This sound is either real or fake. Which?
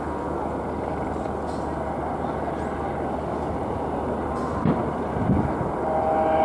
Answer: real